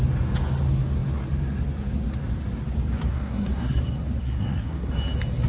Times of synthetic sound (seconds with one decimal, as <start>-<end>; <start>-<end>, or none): 3.1-3.8; 4.2-4.9